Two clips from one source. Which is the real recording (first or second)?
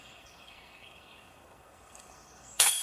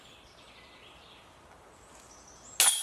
second